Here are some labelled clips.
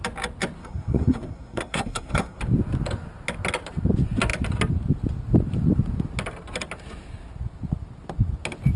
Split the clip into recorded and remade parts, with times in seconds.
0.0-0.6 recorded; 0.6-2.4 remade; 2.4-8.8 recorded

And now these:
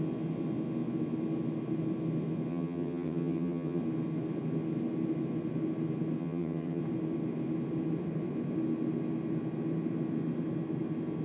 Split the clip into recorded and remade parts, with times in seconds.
0.0-2.5 recorded; 2.5-3.8 remade; 3.8-6.2 recorded; 6.2-6.8 remade; 6.8-11.2 recorded

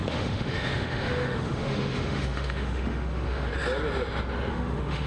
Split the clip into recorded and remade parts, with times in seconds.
0.0-3.5 remade; 3.5-4.5 recorded; 4.5-5.1 remade

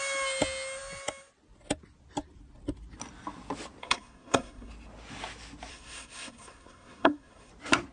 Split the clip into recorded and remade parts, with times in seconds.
0.0-3.8 recorded; 3.8-4.7 remade; 4.7-5.7 recorded; 5.7-7.5 remade; 7.5-7.9 recorded

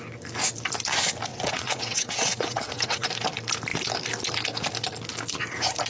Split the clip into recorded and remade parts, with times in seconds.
0.0-1.3 recorded; 1.3-3.1 remade; 3.1-5.9 recorded